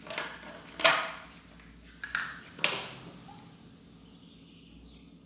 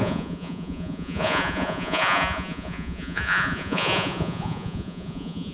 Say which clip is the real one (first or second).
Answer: first